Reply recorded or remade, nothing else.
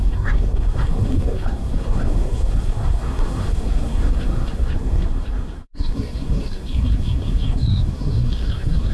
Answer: remade